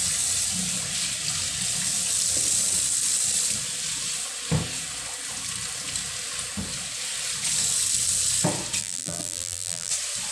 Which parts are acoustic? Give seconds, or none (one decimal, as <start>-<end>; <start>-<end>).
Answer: 0.0-8.8; 9.9-10.3